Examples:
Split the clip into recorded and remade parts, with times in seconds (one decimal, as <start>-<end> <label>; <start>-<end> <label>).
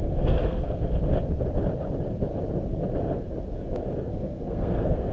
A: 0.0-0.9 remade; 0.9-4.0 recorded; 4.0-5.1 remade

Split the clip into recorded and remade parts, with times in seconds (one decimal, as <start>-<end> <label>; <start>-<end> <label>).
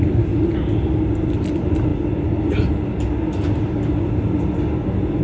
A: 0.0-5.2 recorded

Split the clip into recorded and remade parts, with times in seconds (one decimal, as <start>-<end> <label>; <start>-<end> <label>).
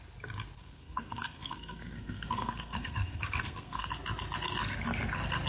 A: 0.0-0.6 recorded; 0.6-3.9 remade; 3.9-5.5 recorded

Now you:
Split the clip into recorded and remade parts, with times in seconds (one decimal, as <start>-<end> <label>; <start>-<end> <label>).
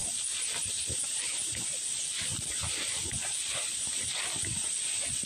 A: 0.0-5.3 recorded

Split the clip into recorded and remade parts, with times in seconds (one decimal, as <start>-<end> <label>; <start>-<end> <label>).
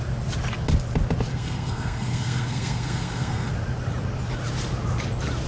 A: 0.0-1.3 recorded; 1.3-3.5 remade; 3.5-5.5 recorded